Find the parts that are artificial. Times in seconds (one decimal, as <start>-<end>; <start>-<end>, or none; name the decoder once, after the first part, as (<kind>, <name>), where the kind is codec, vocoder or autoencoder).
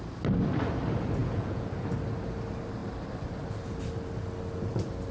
1.2-1.7 (vocoder, Vocos)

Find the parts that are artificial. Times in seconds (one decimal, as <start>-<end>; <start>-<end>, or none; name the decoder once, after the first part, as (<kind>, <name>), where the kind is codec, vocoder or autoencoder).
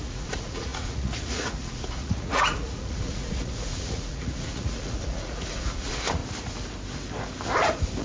0.0-6.2 (vocoder, Vocos)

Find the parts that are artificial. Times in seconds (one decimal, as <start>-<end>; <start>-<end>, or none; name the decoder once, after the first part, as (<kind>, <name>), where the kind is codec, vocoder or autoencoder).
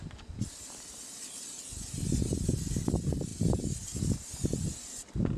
none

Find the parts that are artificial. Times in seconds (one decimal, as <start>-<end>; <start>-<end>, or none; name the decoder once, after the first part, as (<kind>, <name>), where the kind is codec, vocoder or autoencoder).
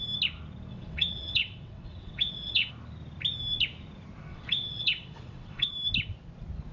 0.7-2.7 (vocoder, WaveNeXt); 4.3-5.7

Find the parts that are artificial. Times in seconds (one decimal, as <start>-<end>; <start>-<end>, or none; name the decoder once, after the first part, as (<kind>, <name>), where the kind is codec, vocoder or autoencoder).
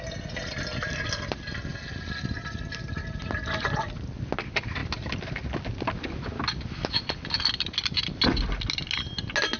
none